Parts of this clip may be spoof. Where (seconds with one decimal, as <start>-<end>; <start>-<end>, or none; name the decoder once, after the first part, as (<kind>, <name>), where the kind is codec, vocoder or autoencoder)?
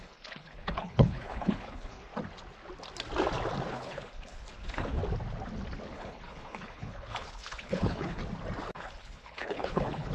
0.0-2.1 (codec, HILCodec); 3.7-5.0; 5.9-8.2; 8.7-10.1